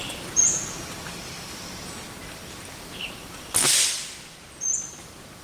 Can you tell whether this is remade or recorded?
recorded